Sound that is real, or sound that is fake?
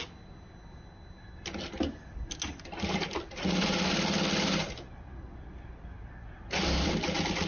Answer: real